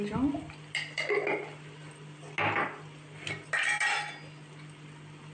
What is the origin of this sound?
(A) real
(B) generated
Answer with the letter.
A